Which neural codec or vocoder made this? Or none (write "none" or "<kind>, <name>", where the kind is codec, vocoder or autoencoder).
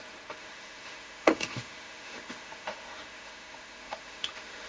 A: autoencoder, DAC-VAE